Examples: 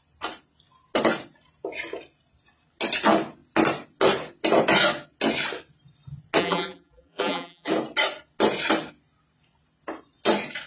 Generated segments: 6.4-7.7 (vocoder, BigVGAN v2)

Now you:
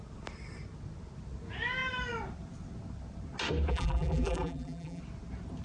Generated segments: 3.7-5.0 (vocoder, BigVGAN v2)